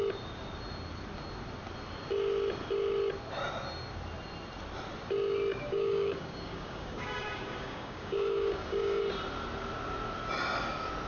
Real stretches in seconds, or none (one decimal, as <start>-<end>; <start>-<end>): 0.0-5.5; 9.0-11.1